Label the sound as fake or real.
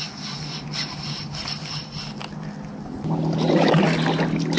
real